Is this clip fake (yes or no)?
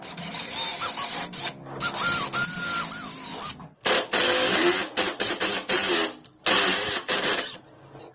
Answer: no